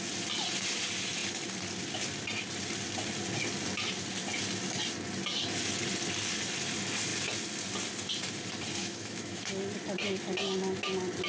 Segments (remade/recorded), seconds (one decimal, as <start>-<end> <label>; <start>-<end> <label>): 0.0-8.8 recorded; 8.8-9.5 remade; 9.5-11.3 recorded